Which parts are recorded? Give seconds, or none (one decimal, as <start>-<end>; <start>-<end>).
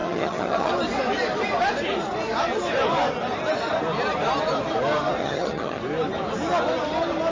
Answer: 0.7-5.2; 5.8-7.3